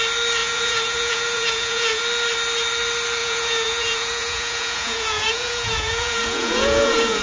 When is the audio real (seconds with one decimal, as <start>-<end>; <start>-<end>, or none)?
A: 0.0-0.4; 2.0-3.2